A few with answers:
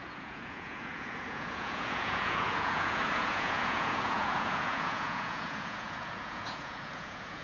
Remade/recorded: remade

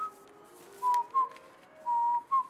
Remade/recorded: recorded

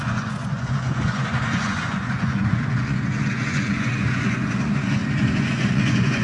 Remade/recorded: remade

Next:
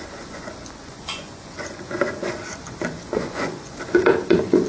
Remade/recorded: remade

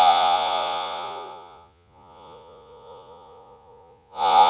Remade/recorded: remade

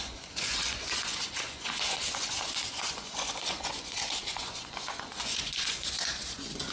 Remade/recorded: remade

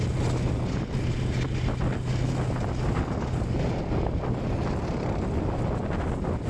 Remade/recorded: recorded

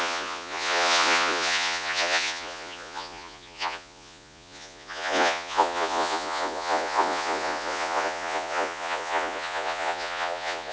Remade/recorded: remade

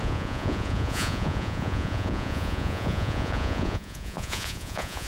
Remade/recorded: remade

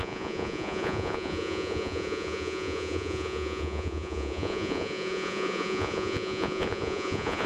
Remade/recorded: remade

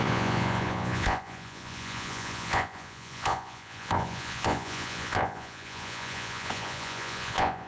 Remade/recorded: remade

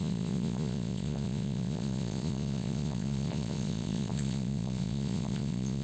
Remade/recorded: remade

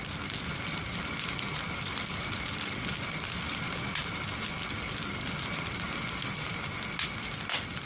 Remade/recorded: recorded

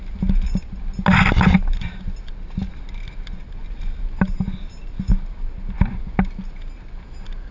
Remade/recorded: recorded